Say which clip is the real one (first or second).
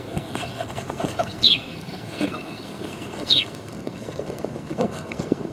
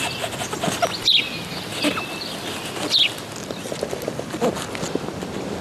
second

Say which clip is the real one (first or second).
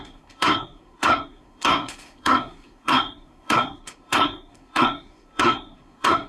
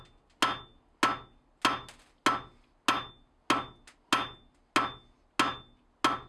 second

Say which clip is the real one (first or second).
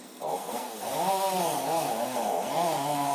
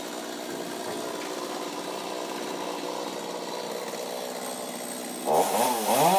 second